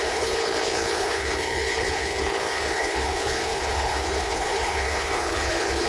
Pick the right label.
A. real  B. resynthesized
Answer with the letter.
B